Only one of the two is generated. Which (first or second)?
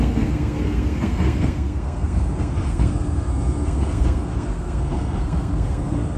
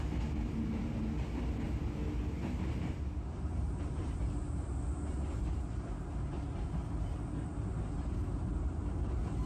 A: first